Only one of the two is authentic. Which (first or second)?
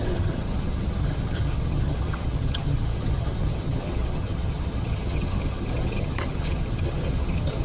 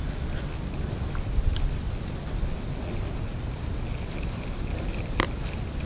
second